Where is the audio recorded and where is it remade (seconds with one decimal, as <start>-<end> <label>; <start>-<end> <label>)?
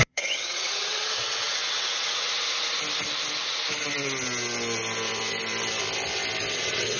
0.0-2.3 remade; 2.3-6.5 recorded; 6.5-7.0 remade